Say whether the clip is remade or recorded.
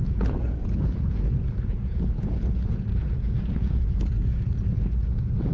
remade